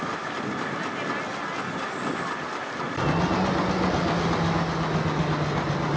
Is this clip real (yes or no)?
yes